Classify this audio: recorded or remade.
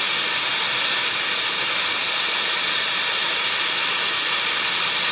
recorded